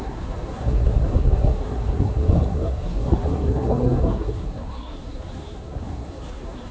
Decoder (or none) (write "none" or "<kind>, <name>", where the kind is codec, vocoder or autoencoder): codec, SNAC